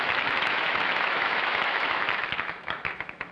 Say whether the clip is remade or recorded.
remade